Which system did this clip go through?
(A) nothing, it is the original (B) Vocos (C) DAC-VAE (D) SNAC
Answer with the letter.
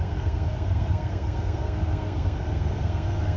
D